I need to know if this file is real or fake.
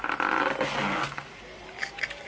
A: real